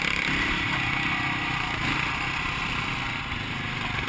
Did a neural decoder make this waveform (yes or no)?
no